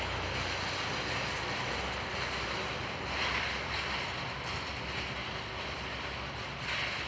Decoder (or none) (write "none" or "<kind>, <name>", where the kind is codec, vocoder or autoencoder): none